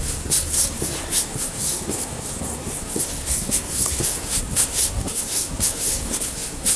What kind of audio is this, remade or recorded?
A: remade